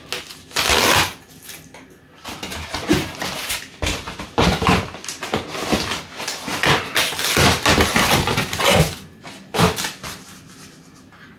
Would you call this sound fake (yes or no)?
no